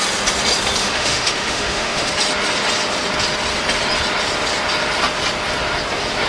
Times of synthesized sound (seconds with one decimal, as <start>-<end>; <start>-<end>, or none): 0.8-2.1